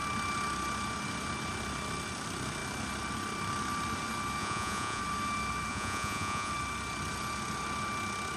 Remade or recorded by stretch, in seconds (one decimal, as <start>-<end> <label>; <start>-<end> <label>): 0.0-4.4 recorded; 4.4-5.0 remade; 5.0-5.7 recorded; 5.7-6.5 remade; 6.5-8.4 recorded

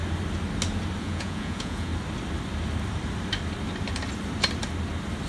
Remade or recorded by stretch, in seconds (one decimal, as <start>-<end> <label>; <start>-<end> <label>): 0.0-1.0 recorded; 1.0-1.9 remade; 1.9-5.3 recorded